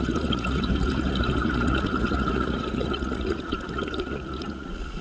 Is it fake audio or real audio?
fake